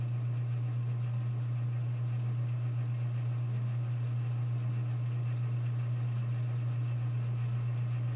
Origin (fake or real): real